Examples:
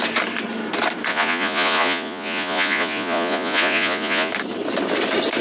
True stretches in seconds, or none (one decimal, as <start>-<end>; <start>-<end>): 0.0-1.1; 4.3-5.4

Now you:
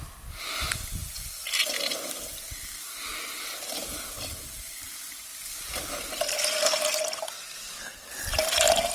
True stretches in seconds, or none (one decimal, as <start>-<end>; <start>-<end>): 0.0-3.1; 4.8-5.3; 6.2-8.9

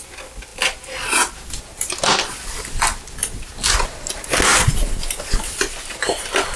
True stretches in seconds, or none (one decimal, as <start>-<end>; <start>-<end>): 0.0-6.6

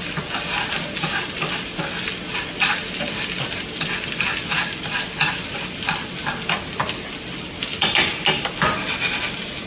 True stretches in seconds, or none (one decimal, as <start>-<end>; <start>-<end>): 0.0-9.7